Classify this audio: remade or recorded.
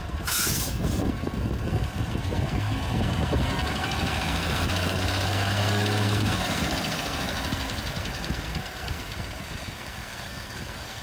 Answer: remade